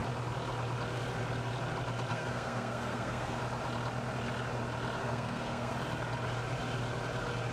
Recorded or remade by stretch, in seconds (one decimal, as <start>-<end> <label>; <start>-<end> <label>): 0.0-2.1 recorded; 2.1-3.4 remade; 3.4-5.0 recorded; 5.0-5.7 remade; 5.7-7.5 recorded